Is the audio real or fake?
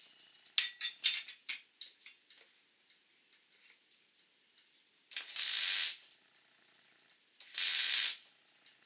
real